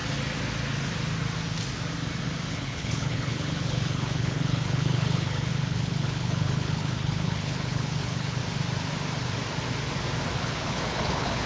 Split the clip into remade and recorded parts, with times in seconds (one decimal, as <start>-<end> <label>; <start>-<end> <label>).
0.0-2.5 recorded; 2.5-8.4 remade; 8.4-10.3 recorded; 10.3-11.5 remade